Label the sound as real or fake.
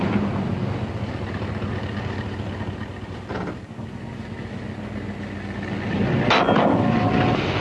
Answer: real